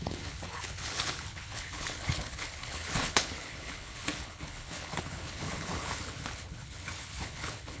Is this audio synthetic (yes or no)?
yes